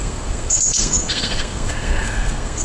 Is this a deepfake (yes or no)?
yes